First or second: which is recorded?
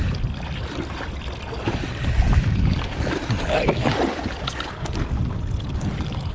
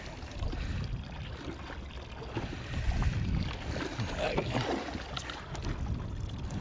second